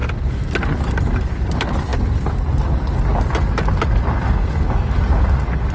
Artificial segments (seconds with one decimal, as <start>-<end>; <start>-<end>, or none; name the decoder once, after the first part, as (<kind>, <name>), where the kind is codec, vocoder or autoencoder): none